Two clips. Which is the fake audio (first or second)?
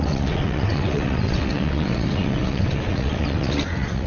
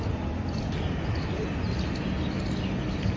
first